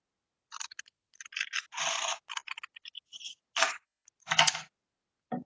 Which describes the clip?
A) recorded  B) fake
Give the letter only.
A